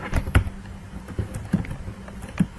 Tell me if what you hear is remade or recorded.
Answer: recorded